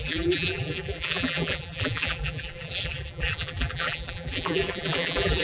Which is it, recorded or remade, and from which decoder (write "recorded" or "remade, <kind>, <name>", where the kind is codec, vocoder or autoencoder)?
remade, vocoder, BigVGAN v2